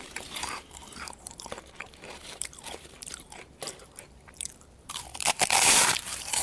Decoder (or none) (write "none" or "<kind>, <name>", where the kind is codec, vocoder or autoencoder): vocoder, BigVGAN v2